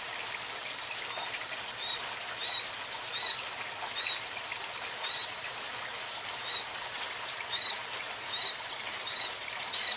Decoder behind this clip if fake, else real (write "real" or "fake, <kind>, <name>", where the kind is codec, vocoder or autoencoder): real